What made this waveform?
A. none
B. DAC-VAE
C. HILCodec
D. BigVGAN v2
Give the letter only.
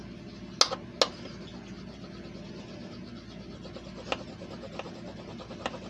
A